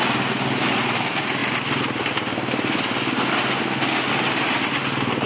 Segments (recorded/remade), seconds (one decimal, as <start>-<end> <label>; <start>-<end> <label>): 0.0-5.3 recorded